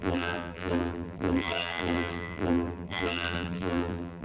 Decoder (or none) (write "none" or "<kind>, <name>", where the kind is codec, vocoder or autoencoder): vocoder, BigVGAN v2